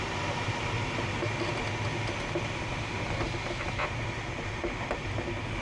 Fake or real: real